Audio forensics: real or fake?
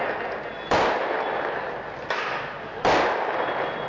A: real